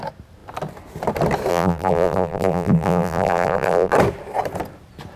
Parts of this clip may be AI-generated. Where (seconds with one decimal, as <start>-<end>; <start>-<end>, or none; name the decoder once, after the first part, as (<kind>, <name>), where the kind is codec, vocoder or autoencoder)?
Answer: 1.5-3.9 (vocoder, BigVGAN v2)